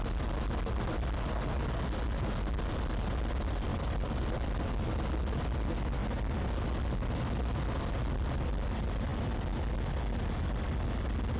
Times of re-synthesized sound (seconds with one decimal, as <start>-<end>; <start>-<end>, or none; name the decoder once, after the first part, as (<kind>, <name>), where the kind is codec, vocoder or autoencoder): 3.7-4.6 (vocoder, BigVGAN v2)